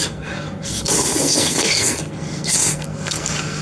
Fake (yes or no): yes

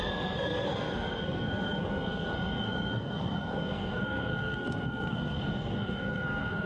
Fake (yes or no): yes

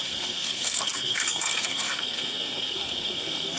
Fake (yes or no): yes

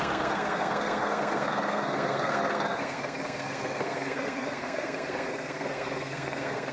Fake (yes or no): yes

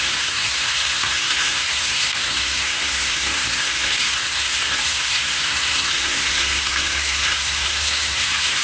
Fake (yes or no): yes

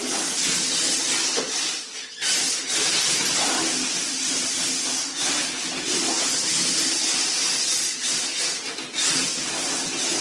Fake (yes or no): no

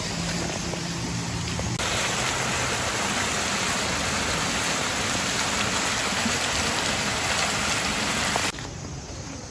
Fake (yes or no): no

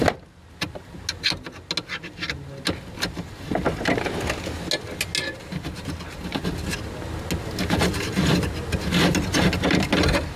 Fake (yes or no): no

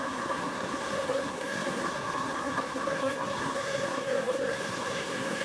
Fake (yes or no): yes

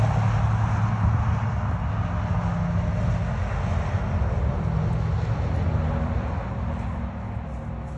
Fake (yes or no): no